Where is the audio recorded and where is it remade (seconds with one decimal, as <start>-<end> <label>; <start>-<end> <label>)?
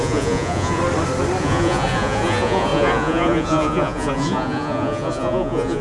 0.0-0.8 remade; 0.8-1.4 recorded; 1.4-5.8 remade